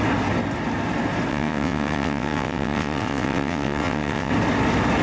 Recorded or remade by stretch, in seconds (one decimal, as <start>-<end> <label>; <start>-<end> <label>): 0.0-1.3 recorded; 1.3-4.3 remade; 4.3-5.0 recorded